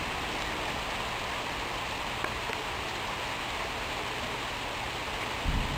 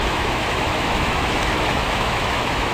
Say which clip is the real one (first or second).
first